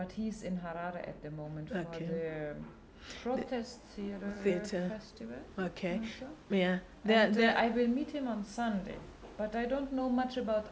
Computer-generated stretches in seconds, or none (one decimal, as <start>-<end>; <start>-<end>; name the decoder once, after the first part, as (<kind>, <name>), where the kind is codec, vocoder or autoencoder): 3.4-4.5 (vocoder, Vocos)